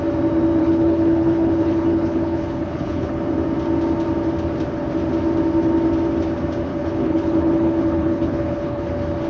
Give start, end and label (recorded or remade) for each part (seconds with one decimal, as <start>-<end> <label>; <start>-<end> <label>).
0.0-0.6 recorded; 0.6-3.2 remade; 3.2-6.7 recorded; 6.7-8.9 remade; 8.9-9.3 recorded